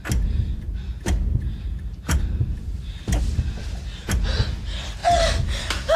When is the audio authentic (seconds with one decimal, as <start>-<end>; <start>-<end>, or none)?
0.0-0.9; 3.2-5.0